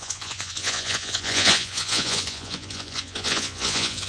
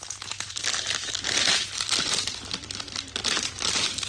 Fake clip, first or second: first